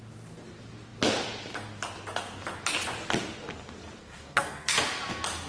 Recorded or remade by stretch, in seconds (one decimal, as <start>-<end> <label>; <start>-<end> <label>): 0.0-4.0 recorded; 4.0-4.8 remade; 4.8-5.5 recorded